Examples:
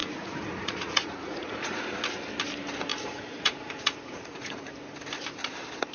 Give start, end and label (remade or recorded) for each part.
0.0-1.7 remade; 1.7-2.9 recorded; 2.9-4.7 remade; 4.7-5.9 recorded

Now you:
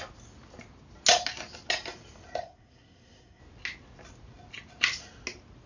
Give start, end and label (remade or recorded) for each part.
0.0-2.4 recorded; 2.4-3.4 remade; 3.4-5.7 recorded

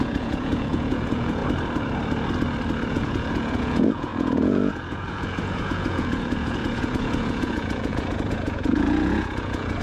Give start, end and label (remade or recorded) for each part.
0.0-1.4 remade; 1.4-2.9 recorded; 2.9-9.8 remade